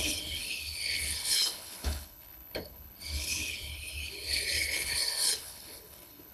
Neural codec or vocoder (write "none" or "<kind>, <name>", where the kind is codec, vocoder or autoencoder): codec, HILCodec